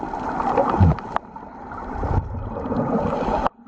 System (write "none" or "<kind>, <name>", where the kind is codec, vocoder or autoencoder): none